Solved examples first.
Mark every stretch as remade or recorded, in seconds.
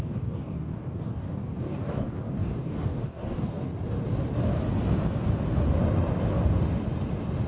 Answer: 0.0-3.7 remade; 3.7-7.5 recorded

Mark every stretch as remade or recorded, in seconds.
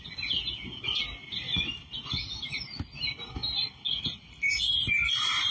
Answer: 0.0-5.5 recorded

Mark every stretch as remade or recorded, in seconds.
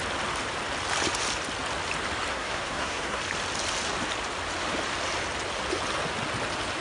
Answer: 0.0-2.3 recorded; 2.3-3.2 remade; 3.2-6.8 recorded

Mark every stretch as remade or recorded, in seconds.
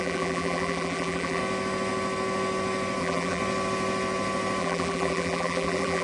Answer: 0.0-1.4 remade; 1.4-3.0 recorded; 3.0-3.4 remade; 3.4-4.6 recorded; 4.6-6.0 remade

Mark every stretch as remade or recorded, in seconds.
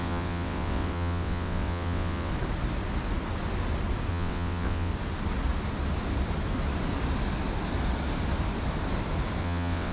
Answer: 0.0-2.3 remade; 2.3-4.1 recorded; 4.1-4.9 remade; 4.9-9.4 recorded; 9.4-9.9 remade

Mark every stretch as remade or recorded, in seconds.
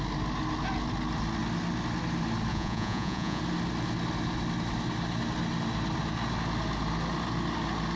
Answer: 0.0-2.5 recorded; 2.5-3.4 remade; 3.4-8.0 recorded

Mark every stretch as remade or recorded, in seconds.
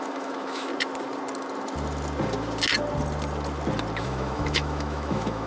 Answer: 0.0-0.7 remade; 0.7-4.0 recorded; 4.0-5.5 remade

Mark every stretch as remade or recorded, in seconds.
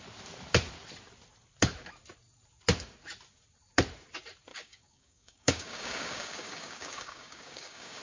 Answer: 0.0-4.5 recorded; 4.5-8.0 remade